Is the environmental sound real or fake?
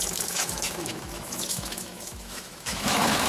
fake